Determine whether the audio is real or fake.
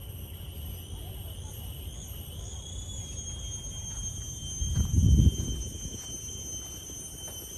real